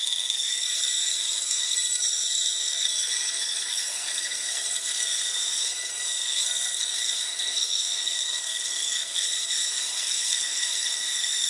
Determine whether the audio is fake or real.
fake